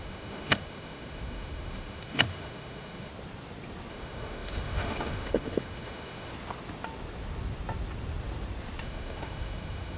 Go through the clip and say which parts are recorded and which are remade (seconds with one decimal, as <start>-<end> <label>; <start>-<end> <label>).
0.0-3.1 remade; 3.1-3.9 recorded; 3.9-6.3 remade; 6.3-8.8 recorded; 8.8-10.0 remade